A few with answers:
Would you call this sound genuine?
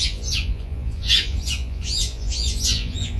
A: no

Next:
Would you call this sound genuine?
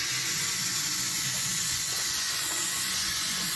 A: no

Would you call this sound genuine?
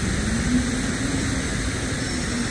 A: yes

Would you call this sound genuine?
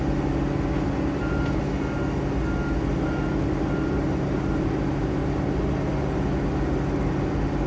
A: yes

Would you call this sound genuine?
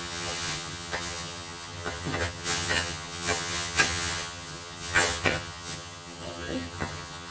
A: no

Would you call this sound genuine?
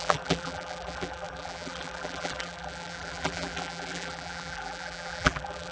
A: no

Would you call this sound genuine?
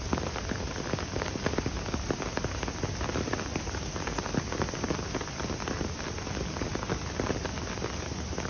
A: yes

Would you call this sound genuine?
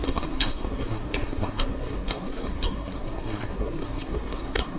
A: no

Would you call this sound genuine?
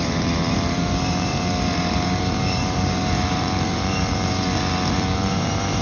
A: no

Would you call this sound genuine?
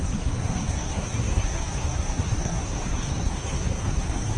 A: no